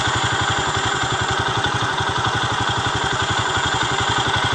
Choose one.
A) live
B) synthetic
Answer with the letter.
B